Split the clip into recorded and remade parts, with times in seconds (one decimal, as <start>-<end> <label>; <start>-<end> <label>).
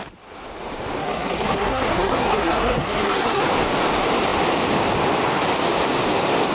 0.0-1.0 recorded; 1.0-3.4 remade; 3.4-6.5 recorded